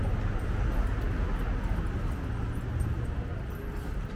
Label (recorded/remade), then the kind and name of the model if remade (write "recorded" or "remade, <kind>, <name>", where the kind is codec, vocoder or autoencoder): recorded